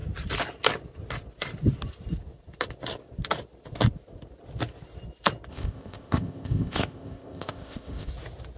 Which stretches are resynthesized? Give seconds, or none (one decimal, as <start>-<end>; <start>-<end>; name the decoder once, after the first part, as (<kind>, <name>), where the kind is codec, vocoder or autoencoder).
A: 5.5-8.1 (codec, ZipCodec)